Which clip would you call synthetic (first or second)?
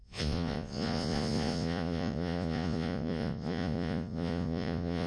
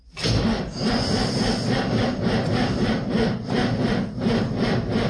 first